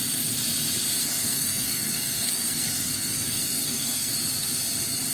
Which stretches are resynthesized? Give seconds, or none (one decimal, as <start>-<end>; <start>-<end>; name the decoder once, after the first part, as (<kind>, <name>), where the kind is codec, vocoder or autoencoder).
1.0-4.1 (codec, SNAC)